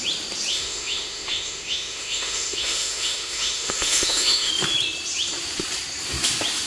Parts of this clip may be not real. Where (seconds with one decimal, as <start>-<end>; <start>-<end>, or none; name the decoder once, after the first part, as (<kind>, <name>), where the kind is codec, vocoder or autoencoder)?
0.5-4.5 (autoencoder, DAC-VAE)